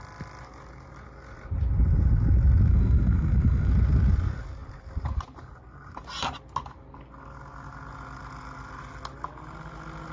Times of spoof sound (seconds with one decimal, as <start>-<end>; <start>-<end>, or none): 2.7-3.7